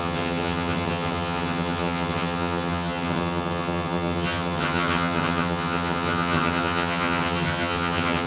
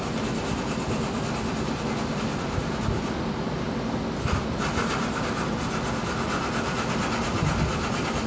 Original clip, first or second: second